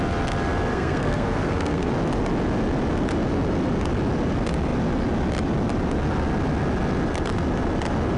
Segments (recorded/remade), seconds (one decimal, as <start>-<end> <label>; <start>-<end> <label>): 0.0-0.7 recorded; 0.7-1.9 remade; 1.9-8.2 recorded